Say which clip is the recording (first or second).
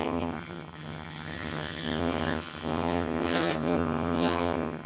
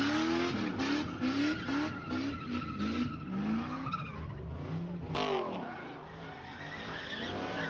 second